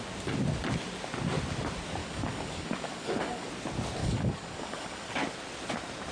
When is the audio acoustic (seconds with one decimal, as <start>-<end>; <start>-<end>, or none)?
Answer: 0.0-2.0; 3.5-4.0; 5.1-6.1